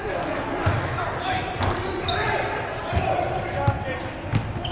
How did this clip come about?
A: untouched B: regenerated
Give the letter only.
B